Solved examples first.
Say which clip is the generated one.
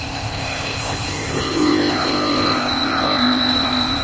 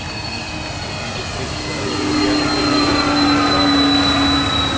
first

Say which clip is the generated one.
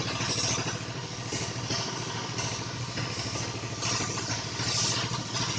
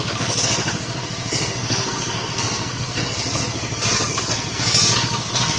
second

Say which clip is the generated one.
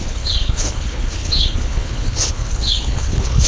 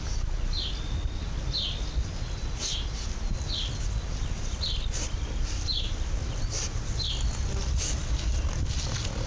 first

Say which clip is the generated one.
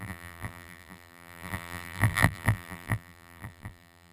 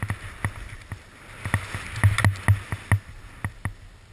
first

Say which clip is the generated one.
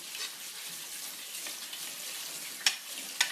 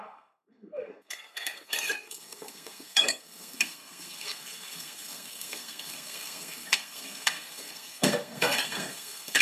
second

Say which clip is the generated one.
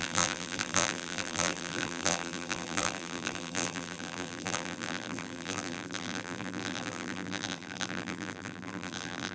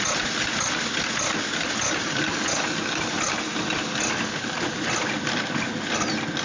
first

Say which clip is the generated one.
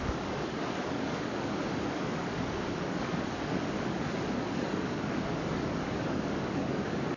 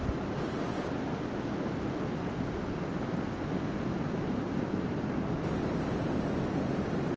first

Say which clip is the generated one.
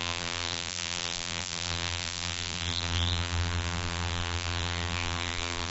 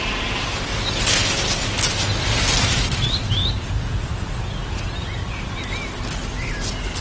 first